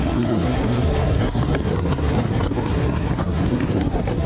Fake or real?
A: fake